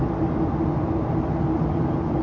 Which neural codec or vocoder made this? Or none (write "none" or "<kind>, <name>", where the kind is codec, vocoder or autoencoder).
none